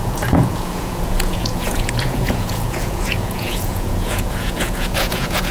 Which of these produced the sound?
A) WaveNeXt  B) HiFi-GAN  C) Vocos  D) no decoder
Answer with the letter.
C